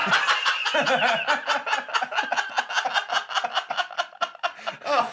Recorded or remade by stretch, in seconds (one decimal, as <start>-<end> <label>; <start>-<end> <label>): 0.0-5.1 recorded